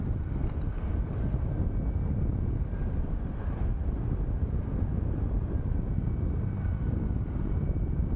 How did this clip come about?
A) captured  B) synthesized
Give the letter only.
A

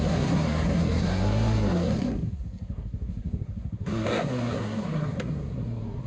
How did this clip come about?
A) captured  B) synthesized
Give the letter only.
B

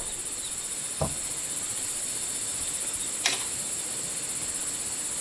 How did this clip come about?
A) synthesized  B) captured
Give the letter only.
B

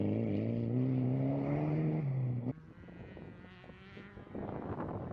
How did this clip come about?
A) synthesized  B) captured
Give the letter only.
B